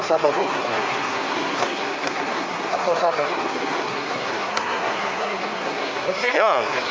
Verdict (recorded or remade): remade